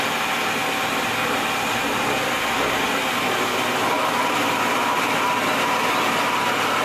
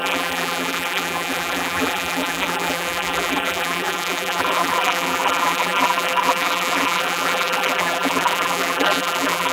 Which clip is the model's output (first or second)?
second